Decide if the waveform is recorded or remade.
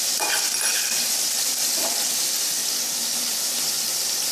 recorded